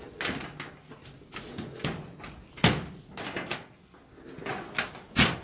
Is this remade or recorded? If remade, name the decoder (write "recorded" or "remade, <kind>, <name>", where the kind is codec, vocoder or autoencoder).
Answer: recorded